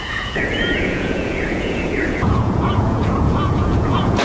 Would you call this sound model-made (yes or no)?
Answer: yes